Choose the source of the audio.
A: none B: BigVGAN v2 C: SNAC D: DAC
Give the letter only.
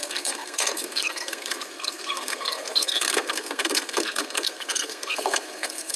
C